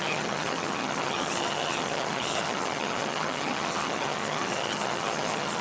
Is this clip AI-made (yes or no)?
yes